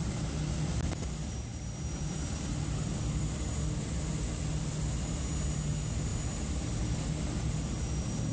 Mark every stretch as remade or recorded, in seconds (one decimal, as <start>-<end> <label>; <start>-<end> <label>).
0.0-1.5 recorded; 1.5-3.2 remade; 3.2-8.3 recorded